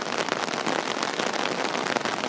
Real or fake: real